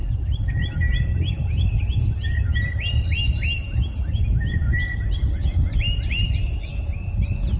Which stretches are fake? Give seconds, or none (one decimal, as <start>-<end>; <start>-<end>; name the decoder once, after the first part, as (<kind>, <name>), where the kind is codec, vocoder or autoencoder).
none